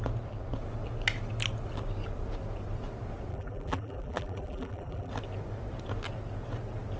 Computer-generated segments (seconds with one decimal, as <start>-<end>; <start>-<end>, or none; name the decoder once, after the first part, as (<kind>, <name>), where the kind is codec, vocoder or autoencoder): 3.3-5.1 (vocoder, BigVGAN v2)